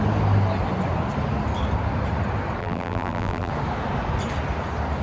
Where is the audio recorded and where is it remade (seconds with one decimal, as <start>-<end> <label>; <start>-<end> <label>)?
0.0-2.6 recorded; 2.6-3.5 remade; 3.5-5.0 recorded

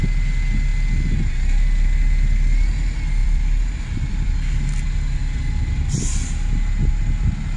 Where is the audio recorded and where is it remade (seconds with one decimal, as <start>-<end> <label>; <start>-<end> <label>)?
0.0-3.2 recorded; 3.2-6.6 remade; 6.6-7.6 recorded

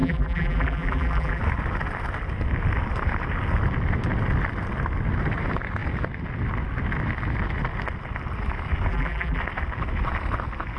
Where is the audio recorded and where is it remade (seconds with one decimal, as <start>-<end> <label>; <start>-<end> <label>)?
0.0-1.4 remade; 1.4-8.9 recorded; 8.9-9.4 remade; 9.4-10.8 recorded

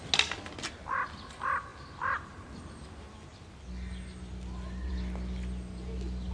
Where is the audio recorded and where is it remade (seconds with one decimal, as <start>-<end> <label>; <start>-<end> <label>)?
0.0-6.3 recorded